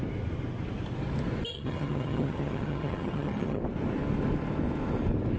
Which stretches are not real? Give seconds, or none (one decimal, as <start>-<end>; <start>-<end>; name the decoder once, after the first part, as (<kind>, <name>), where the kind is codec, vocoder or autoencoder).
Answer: 1.5-3.6 (vocoder, HiFi-GAN)